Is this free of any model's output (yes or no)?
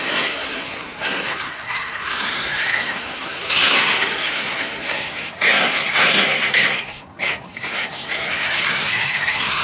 no